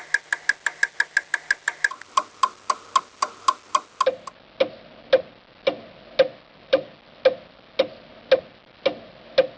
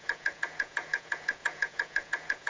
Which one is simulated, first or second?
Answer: second